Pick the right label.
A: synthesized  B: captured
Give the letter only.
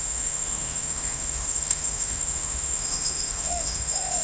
A